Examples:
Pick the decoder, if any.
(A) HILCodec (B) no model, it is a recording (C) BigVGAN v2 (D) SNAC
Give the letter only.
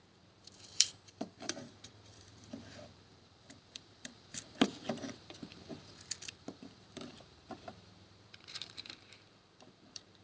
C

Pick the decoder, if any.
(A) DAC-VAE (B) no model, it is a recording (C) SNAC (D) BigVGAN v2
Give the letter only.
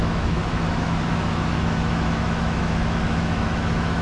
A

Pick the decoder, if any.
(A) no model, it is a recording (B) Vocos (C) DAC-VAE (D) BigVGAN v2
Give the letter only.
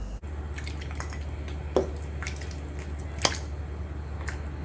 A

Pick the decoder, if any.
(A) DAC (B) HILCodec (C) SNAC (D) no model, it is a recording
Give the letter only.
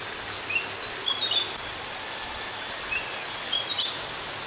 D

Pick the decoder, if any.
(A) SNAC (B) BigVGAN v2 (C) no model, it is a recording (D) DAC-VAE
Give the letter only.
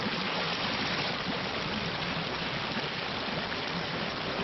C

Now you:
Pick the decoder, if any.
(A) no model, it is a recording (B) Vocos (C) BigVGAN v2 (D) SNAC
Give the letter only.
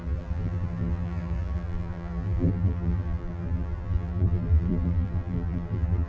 C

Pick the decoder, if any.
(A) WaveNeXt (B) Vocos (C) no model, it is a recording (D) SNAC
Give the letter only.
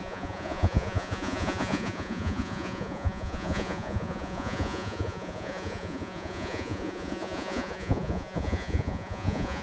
B